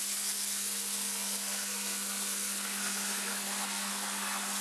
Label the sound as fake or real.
fake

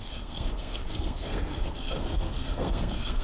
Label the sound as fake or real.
fake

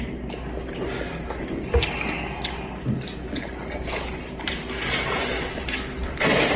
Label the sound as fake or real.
real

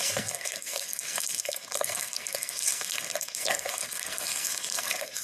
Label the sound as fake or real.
fake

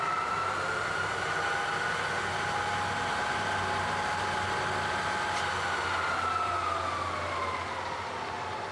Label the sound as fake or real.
real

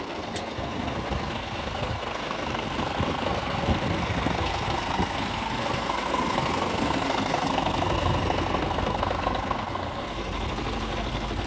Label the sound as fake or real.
fake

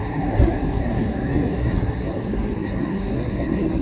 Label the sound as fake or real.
fake